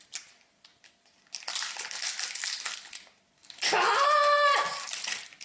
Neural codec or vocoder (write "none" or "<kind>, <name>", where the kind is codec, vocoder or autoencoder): none